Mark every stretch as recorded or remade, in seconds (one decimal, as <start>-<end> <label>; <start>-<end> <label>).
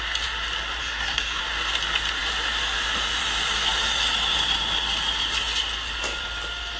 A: 0.0-0.8 recorded; 0.8-1.4 remade; 1.4-6.8 recorded